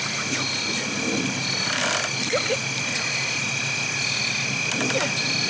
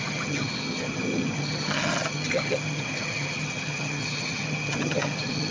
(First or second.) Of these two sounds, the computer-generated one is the second